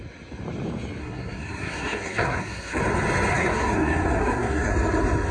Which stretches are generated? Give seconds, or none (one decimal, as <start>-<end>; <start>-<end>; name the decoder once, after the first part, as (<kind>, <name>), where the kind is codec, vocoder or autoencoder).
1.0-2.8 (codec, SNAC); 3.3-4.7